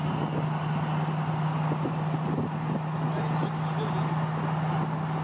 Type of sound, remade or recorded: recorded